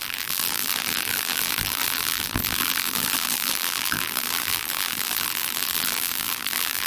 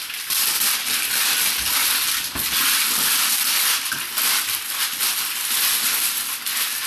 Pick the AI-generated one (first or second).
first